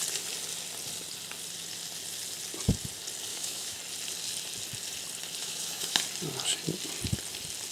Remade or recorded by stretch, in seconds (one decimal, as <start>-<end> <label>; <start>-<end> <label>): 0.0-3.3 recorded; 3.3-3.8 remade; 3.8-5.4 recorded; 5.4-6.0 remade; 6.0-7.7 recorded